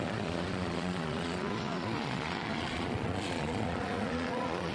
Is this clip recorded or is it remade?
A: remade